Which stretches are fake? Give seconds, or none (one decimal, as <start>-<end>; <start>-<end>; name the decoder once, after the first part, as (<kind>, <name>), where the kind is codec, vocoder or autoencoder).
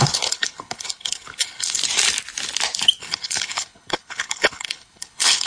0.0-1.8 (codec, HILCodec); 3.0-5.5